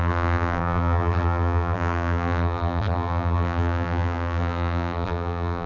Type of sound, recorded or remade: remade